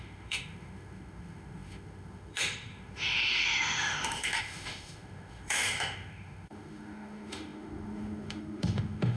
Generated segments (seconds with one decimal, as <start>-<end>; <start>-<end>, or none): 0.0-9.2